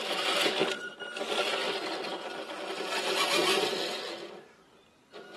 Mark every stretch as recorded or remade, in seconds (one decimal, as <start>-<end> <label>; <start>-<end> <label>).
0.0-5.4 recorded